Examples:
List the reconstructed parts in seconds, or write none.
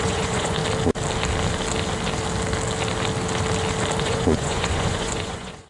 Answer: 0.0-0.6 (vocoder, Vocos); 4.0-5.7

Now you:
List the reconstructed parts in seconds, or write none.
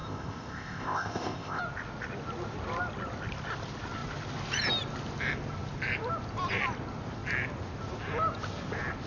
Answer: 0.0-1.6 (codec, ZipCodec)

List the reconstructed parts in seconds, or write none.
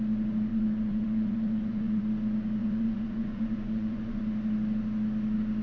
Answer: 0.5-2.0 (vocoder, Vocos); 2.6-4.2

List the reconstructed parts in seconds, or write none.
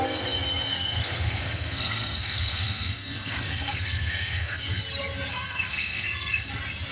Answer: 0.7-4.8 (codec, SNAC); 5.3-6.5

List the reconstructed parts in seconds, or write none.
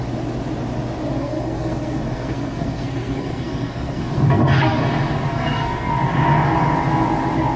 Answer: 1.1-4.8 (codec, SNAC); 5.3-5.9